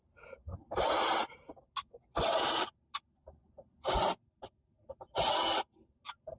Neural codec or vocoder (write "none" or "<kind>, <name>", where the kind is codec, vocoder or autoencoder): none